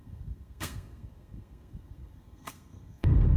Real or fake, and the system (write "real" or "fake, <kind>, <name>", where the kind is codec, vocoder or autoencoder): fake, codec, SNAC